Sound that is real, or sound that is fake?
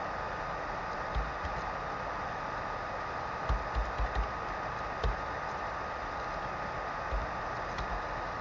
real